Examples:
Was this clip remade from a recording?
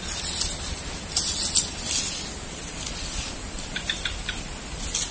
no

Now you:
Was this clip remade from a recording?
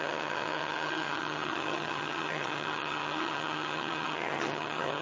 yes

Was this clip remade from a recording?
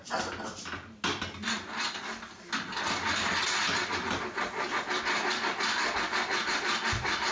no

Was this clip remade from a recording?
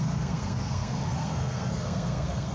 yes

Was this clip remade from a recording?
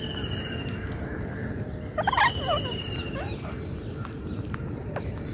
no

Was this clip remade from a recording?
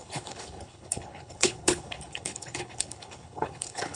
yes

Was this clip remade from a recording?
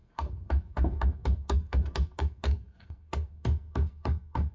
yes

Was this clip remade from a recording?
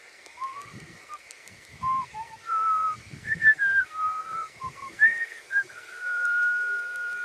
yes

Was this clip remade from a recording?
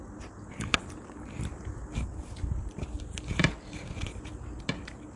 no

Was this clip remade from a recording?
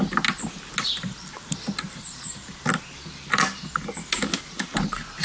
no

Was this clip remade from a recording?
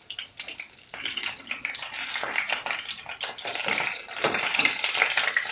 no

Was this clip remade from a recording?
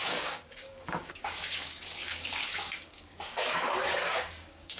yes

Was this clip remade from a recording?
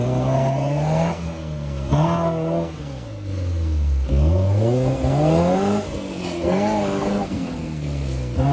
yes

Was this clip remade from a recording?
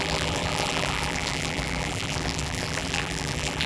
yes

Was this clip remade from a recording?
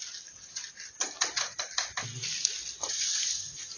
no